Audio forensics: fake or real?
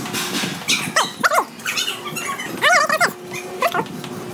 real